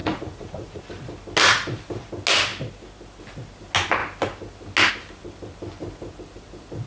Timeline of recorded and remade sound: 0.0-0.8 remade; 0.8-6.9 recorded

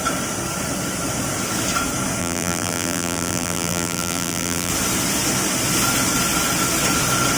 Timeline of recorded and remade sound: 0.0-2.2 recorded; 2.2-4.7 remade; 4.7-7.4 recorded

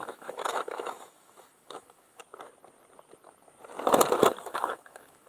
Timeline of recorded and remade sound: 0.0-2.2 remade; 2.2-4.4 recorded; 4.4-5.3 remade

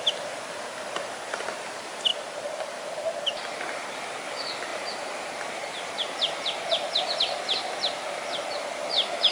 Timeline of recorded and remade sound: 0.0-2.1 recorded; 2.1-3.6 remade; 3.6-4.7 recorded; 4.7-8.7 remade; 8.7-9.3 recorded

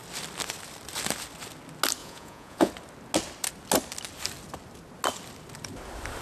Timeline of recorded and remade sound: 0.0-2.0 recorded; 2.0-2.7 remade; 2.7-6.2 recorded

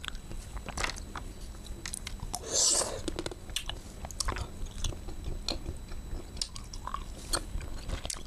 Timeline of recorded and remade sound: 0.0-8.3 recorded